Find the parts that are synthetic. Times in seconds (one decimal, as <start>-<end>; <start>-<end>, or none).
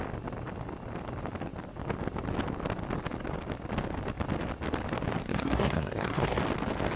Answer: 5.2-6.4